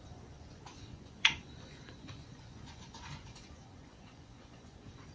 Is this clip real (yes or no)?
no